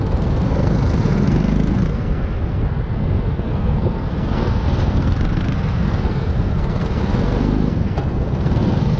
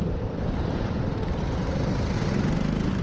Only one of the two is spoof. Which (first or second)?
first